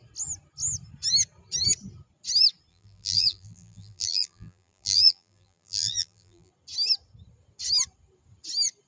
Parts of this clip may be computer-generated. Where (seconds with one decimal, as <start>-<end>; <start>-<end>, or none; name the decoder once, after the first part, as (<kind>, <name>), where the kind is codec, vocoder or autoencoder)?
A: 2.7-6.5 (vocoder, BigVGAN v2)